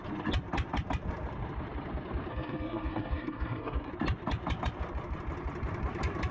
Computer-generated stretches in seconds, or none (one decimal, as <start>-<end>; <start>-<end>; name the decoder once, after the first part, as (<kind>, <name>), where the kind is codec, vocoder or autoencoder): 2.3-3.9 (codec, SNAC)